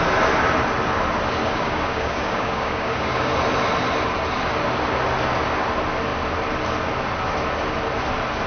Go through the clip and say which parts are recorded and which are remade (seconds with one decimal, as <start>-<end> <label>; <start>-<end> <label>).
0.0-1.4 recorded; 1.4-3.3 remade; 3.3-8.5 recorded